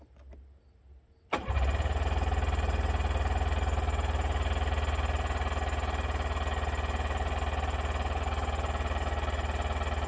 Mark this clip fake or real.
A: real